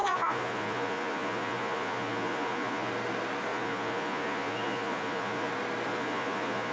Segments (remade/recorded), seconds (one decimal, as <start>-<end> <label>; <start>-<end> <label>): 0.0-2.9 remade; 2.9-3.5 recorded; 3.5-5.5 remade; 5.5-5.9 recorded; 5.9-6.7 remade